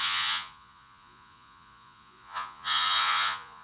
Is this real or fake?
fake